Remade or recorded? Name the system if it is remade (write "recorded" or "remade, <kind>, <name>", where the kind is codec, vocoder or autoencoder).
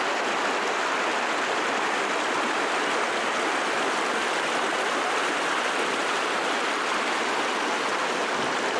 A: recorded